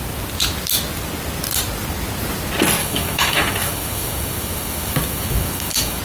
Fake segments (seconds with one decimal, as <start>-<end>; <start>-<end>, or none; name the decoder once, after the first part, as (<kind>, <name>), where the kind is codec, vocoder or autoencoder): 2.8-6.0 (autoencoder, DAC-VAE)